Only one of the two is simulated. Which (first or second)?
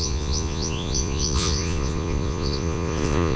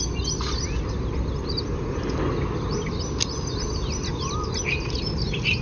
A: first